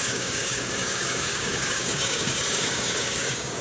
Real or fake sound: fake